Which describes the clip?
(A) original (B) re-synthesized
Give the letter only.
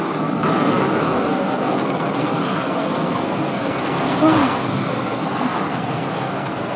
B